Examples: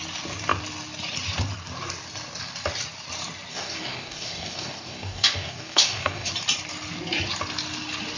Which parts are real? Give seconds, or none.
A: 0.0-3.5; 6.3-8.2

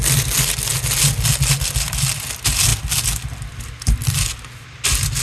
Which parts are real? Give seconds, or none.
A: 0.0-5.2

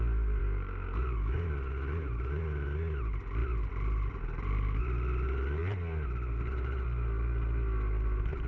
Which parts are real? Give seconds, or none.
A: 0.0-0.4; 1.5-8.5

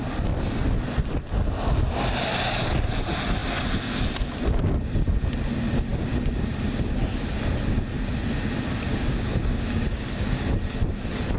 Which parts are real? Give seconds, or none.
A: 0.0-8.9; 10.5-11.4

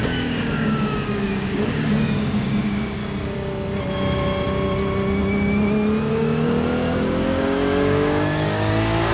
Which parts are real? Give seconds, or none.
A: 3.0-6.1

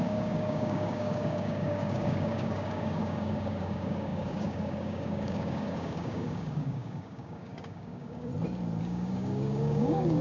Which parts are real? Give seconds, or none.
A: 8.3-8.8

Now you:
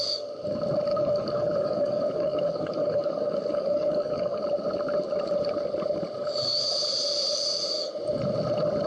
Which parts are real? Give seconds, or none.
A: 0.0-0.9; 4.4-8.9